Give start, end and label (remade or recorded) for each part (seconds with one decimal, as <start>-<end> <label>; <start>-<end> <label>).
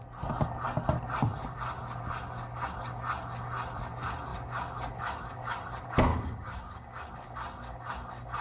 0.0-6.1 recorded; 6.1-7.1 remade; 7.1-8.4 recorded